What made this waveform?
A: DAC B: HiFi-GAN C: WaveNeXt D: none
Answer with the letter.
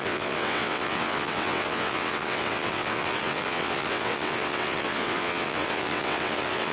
C